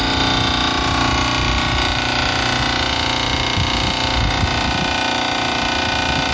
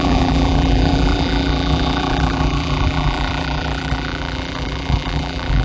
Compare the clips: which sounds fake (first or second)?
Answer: second